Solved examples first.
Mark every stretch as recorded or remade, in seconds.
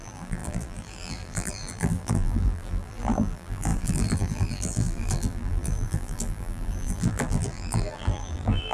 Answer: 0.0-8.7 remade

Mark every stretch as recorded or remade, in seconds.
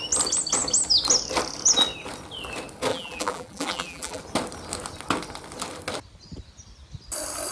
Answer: 0.0-2.9 recorded; 2.9-4.2 remade; 4.2-7.5 recorded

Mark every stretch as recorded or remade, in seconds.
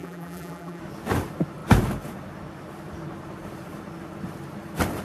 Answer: 0.0-0.8 remade; 0.8-5.0 recorded